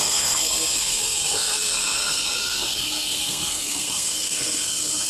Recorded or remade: remade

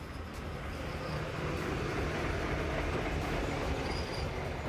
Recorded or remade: recorded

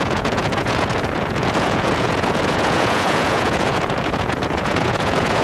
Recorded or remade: remade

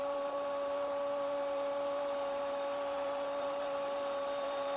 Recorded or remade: remade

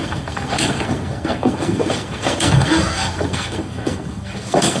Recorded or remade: remade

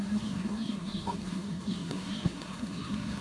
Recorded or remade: remade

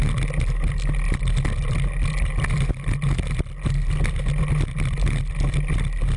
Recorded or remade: recorded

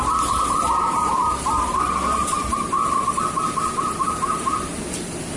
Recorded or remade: recorded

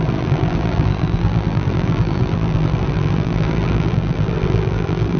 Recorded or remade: remade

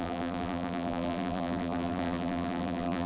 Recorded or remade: remade